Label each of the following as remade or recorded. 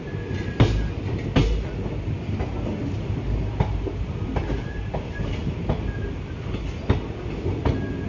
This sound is recorded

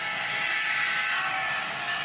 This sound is remade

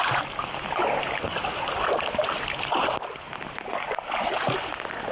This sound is recorded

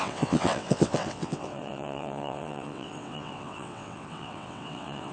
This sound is remade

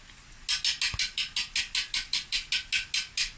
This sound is recorded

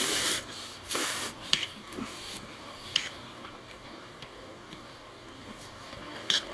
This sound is remade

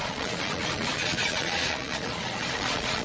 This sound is remade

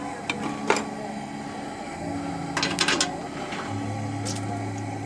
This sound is recorded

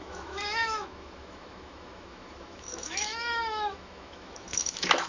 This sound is remade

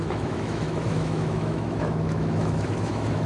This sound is remade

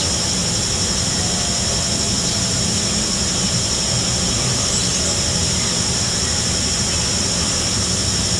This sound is recorded